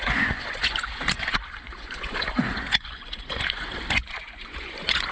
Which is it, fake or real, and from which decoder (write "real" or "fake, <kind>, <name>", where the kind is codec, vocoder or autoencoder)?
fake, vocoder, Vocos